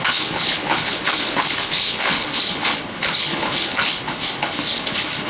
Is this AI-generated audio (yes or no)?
yes